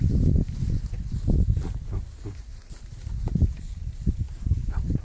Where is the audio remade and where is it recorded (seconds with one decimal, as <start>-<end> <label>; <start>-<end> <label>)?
0.0-5.0 recorded